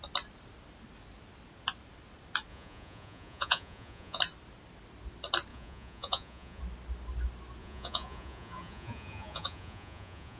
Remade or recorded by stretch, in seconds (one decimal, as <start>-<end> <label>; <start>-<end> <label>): 0.0-2.5 recorded; 2.5-4.2 remade; 4.2-5.5 recorded; 5.5-6.6 remade; 6.6-7.6 recorded; 7.6-10.4 remade